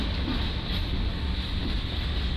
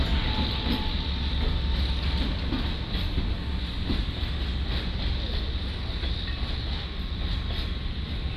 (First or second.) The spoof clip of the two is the first